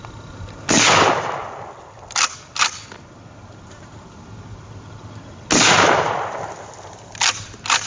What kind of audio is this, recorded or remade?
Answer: recorded